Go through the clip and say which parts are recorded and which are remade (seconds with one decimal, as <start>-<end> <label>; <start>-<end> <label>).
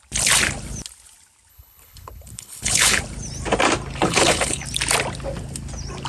0.0-1.5 recorded; 1.5-3.0 remade; 3.0-4.0 recorded; 4.0-4.6 remade; 4.6-6.1 recorded